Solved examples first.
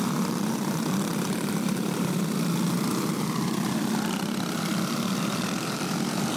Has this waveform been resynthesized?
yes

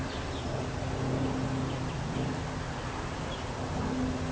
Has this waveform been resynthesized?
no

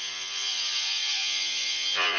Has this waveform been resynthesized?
yes